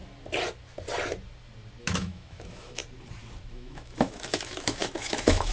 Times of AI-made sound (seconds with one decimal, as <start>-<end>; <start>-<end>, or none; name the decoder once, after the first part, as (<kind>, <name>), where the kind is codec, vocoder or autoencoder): 1.8-2.8 (autoencoder, DAC-VAE); 3.5-5.5